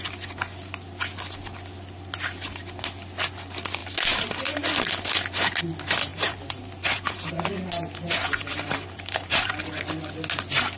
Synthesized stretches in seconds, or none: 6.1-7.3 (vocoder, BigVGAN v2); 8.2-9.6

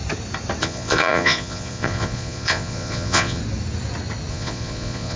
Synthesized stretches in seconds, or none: 0.6-3.4 (vocoder, Vocos); 4.3-5.2

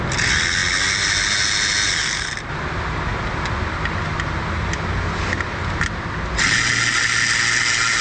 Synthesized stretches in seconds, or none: none

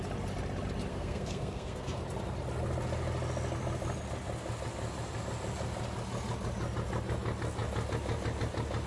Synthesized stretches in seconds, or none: 0.9-2.0 (codec, SNAC)

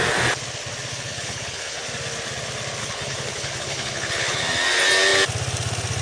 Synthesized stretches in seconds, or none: 0.9-1.8 (codec, HILCodec); 2.8-4.4

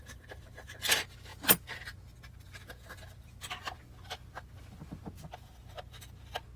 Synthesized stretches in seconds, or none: none

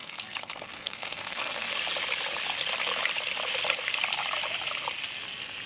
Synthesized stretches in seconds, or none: 0.0-1.7 (codec, SNAC)